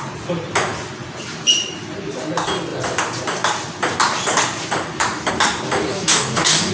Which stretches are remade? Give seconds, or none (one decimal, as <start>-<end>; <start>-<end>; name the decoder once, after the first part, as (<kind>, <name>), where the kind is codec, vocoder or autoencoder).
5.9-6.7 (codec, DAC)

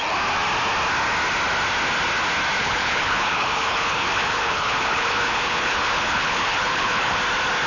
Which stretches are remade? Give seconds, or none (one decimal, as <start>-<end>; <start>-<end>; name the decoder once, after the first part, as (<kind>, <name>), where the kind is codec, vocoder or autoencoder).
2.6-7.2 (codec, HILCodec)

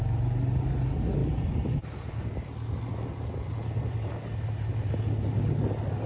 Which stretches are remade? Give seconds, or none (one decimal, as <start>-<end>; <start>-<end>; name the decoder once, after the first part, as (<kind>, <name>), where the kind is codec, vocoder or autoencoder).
1.2-4.9 (vocoder, BigVGAN v2)

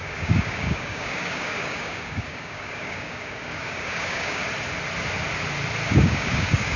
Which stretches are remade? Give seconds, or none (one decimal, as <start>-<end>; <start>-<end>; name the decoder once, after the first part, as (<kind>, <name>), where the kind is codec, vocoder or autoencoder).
0.0-4.4 (codec, DAC); 5.9-6.8

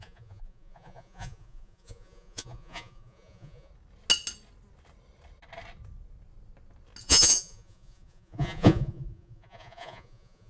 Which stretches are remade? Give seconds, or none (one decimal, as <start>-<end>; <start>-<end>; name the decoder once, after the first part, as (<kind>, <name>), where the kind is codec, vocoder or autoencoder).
0.0-3.7 (vocoder, Vocos); 7.0-10.5